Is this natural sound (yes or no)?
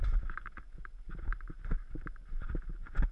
yes